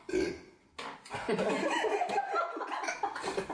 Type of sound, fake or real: real